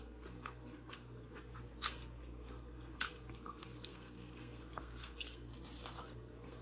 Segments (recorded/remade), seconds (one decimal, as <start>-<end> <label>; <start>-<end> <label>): 0.0-5.5 remade; 5.5-6.0 recorded; 6.0-6.6 remade